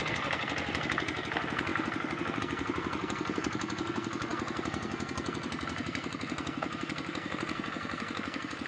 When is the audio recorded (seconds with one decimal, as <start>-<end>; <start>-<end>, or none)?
none